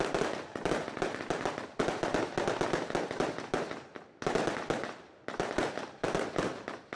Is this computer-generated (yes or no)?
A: no